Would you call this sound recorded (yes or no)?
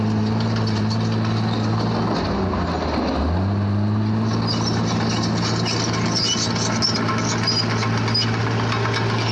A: yes